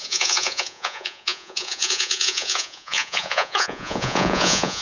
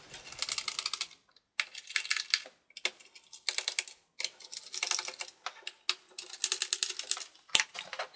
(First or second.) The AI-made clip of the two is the first